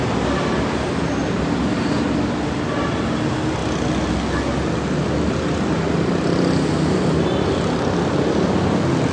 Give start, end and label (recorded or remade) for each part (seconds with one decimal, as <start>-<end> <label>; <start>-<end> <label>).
0.0-9.1 recorded